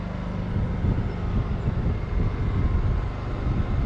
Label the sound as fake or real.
real